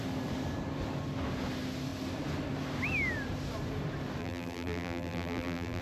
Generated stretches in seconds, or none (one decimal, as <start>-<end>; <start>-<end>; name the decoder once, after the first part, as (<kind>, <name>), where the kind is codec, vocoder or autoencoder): 4.2-5.8 (vocoder, BigVGAN v2)